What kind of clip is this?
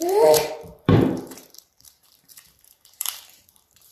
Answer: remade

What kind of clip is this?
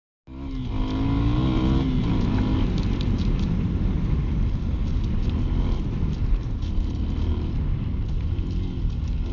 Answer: recorded